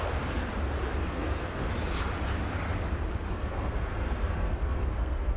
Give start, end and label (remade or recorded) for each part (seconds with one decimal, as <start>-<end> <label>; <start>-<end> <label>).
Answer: 0.0-1.0 recorded; 1.0-1.7 remade; 1.7-3.3 recorded; 3.3-5.4 remade